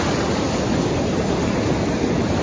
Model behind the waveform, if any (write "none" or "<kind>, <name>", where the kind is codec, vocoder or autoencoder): none